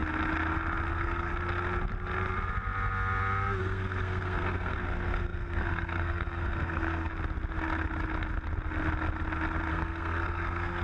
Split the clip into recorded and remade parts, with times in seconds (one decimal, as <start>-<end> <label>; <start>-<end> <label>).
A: 0.0-0.9 recorded; 0.9-1.3 remade; 1.3-3.6 recorded; 3.6-7.1 remade; 7.1-9.7 recorded; 9.7-10.8 remade